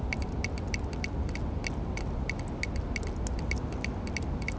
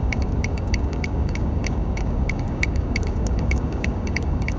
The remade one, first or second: second